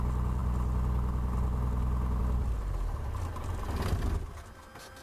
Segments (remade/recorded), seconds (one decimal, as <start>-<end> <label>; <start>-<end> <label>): 0.0-5.0 recorded